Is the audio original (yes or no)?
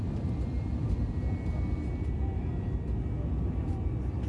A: yes